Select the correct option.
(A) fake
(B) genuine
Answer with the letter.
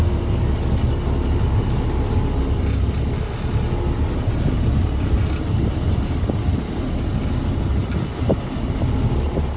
B